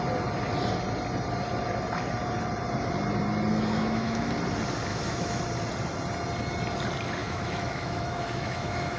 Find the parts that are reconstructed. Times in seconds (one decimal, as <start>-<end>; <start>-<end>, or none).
3.5-4.3; 4.9-5.4; 7.2-9.0